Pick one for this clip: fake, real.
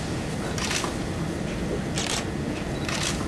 real